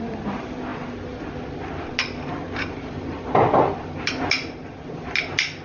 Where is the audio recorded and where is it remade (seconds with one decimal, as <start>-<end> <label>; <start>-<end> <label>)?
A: 0.0-5.6 recorded